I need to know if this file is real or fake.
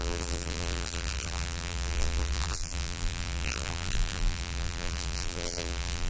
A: fake